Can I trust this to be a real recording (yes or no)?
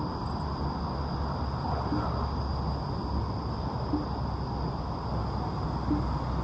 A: yes